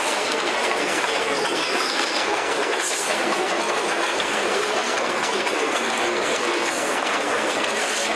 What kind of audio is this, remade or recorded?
remade